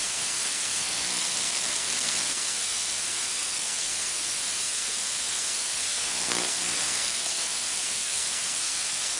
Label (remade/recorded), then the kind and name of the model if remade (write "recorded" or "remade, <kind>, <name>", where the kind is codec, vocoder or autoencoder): remade, codec, SNAC